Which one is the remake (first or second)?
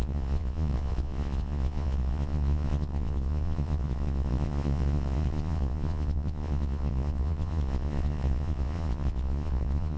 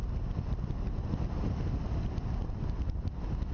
first